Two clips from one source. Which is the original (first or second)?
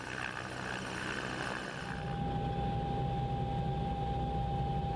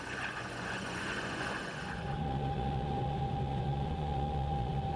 first